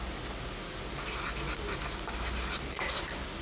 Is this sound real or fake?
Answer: real